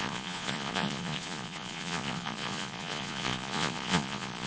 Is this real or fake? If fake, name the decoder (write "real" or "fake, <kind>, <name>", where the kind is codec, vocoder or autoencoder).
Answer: fake, vocoder, Vocos